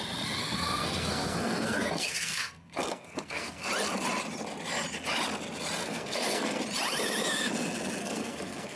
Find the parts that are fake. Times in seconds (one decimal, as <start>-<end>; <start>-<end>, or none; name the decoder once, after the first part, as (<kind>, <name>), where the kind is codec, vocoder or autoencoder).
0.4-3.7 (codec, SNAC); 5.8-6.6; 8.0-8.8